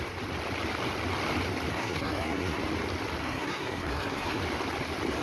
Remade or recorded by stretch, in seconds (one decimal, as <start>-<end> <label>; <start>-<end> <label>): 0.0-1.7 recorded; 1.7-2.6 remade; 2.6-3.2 recorded; 3.2-4.4 remade; 4.4-5.2 recorded